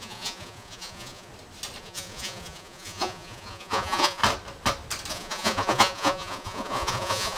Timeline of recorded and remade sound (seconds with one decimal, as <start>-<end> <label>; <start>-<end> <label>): 0.0-1.3 remade; 1.3-1.8 recorded; 1.8-4.2 remade; 4.2-5.1 recorded; 5.1-7.4 remade